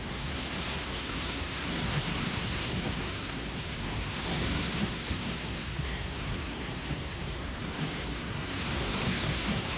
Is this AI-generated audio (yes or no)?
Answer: yes